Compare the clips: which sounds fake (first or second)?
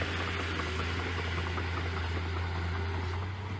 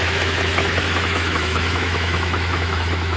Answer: second